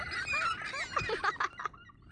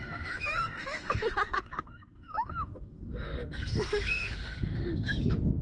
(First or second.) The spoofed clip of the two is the second